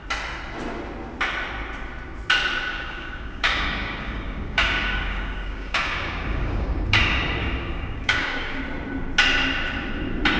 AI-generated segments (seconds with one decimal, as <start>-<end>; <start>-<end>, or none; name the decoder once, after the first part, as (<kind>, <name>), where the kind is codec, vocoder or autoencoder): 2.7-7.0 (codec, DAC); 7.4-8.6